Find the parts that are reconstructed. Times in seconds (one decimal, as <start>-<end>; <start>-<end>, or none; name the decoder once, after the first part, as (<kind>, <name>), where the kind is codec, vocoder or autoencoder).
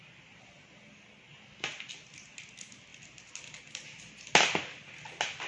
none